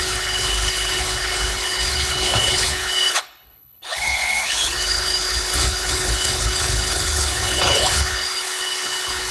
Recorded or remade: remade